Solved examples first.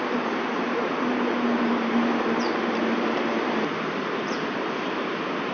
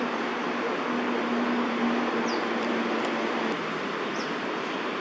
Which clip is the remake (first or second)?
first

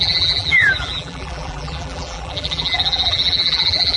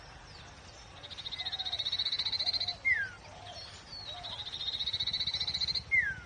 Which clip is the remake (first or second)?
first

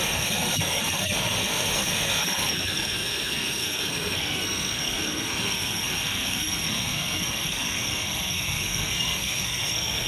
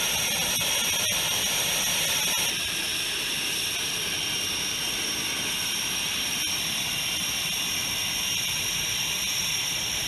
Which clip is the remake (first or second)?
first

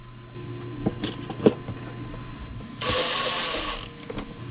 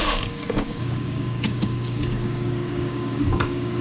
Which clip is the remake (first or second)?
second